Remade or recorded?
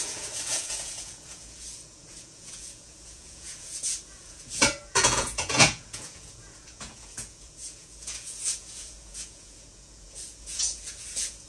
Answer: remade